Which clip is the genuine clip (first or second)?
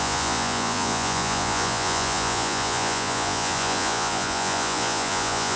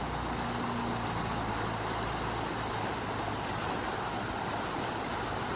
second